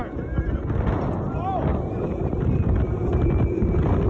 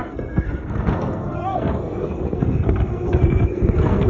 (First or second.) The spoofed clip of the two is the second